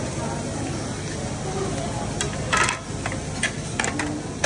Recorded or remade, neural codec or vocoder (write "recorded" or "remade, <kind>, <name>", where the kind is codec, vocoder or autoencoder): recorded